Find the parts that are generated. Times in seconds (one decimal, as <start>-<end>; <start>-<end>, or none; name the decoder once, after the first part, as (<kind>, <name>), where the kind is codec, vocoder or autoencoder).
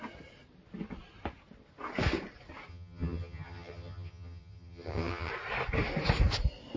2.7-5.3 (vocoder, HiFi-GAN)